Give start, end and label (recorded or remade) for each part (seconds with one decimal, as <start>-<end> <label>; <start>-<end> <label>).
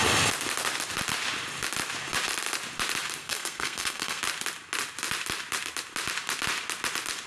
0.0-3.2 recorded; 3.2-4.2 remade; 4.2-7.3 recorded